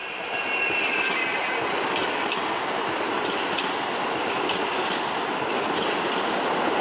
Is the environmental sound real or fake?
real